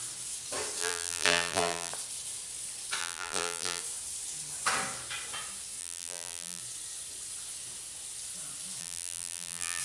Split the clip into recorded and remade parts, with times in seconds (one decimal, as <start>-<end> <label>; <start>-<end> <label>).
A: 0.0-0.8 recorded; 0.8-1.9 remade; 1.9-3.0 recorded; 3.0-3.8 remade; 3.8-5.8 recorded; 5.8-6.6 remade; 6.6-8.8 recorded; 8.8-9.8 remade